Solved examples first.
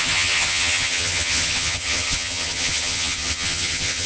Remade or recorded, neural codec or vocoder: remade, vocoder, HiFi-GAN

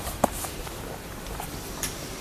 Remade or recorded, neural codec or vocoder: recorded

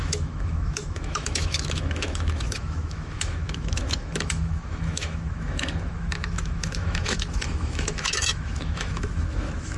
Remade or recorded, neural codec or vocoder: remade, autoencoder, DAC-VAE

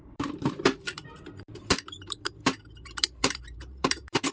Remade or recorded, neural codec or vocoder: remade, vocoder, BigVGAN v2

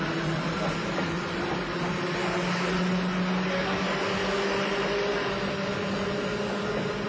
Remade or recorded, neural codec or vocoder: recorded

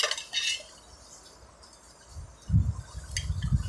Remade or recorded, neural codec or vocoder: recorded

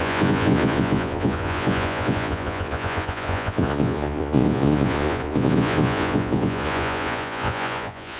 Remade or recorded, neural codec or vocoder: remade, vocoder, Vocos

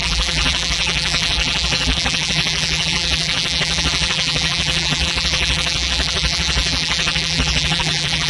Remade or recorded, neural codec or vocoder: remade, vocoder, BigVGAN v2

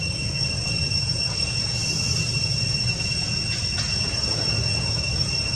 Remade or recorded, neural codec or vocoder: remade, vocoder, Vocos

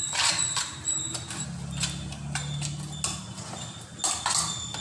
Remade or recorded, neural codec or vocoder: recorded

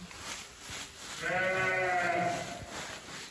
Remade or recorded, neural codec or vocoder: recorded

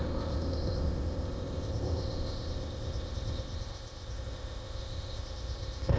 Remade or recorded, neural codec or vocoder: remade, codec, ZipCodec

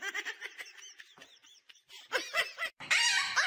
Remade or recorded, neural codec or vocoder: remade, vocoder, BigVGAN v2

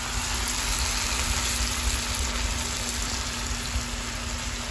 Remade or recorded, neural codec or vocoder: recorded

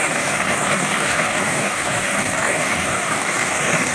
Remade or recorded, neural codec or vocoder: remade, codec, DAC